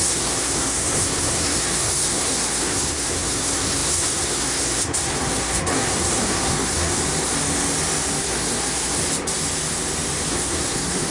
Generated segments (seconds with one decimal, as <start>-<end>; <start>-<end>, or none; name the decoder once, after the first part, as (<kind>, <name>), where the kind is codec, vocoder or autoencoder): 0.0-7.0 (codec, SNAC); 8.2-9.0; 10.3-11.1